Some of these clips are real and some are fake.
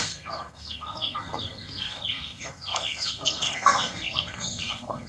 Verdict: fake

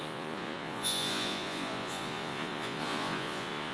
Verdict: fake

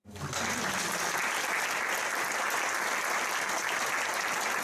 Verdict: real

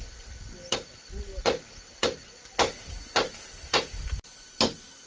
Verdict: real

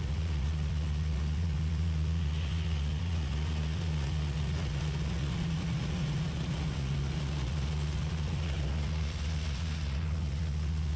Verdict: fake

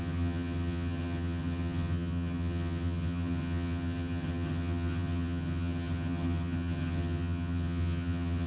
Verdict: fake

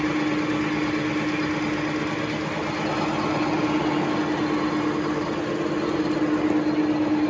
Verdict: real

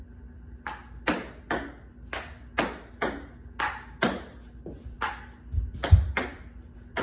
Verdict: real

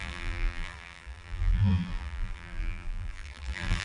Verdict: fake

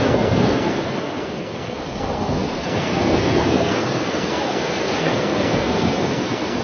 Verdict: fake